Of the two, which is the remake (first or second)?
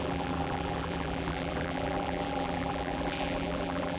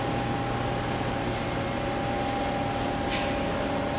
first